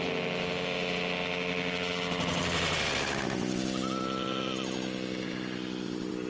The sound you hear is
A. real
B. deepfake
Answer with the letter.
A